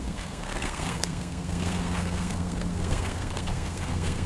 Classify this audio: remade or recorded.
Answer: remade